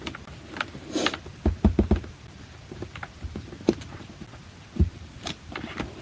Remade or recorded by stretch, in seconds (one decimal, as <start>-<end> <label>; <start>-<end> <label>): 0.0-6.0 recorded